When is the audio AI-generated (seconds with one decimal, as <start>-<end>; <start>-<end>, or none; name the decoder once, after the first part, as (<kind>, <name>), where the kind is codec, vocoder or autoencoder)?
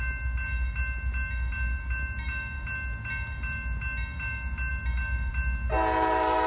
none